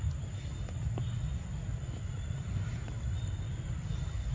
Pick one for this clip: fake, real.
real